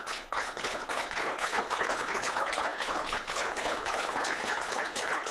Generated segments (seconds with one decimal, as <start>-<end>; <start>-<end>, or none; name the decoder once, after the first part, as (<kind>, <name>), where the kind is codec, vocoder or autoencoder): 0.0-5.3 (codec, HILCodec)